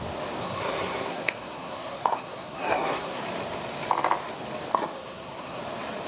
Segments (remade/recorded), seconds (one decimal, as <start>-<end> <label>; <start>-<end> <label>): 0.0-0.4 recorded; 0.4-3.2 remade; 3.2-4.7 recorded; 4.7-5.6 remade; 5.6-6.1 recorded

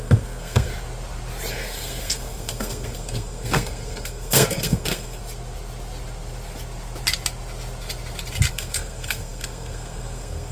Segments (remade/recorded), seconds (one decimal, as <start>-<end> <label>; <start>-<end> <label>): 0.0-0.7 remade; 0.7-1.5 recorded; 1.5-5.2 remade; 5.2-8.5 recorded; 8.5-10.5 remade